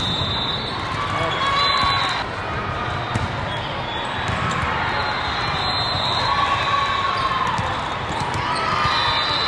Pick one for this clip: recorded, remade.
recorded